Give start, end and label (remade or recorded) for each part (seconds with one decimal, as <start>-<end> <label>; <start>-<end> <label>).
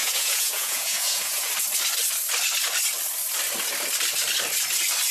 0.0-1.5 remade; 1.5-5.1 recorded